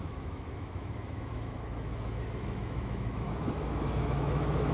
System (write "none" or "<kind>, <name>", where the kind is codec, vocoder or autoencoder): autoencoder, DAC-VAE